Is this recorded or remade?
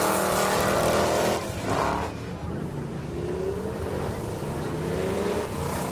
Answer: recorded